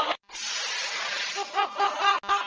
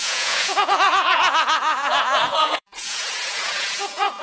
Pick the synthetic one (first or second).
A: second